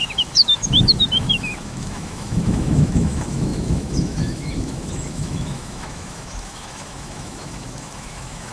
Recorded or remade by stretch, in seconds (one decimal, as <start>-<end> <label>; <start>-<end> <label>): 0.0-8.5 remade